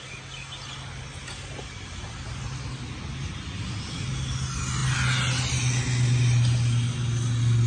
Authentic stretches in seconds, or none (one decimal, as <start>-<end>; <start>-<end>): 0.0-7.7